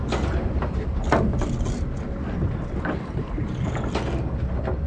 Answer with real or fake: real